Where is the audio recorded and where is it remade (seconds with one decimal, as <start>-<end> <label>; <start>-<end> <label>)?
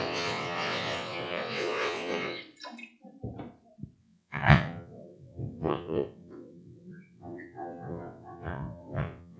0.0-2.4 remade; 2.4-4.0 recorded; 4.0-9.4 remade